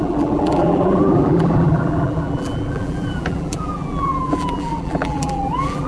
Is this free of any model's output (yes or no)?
no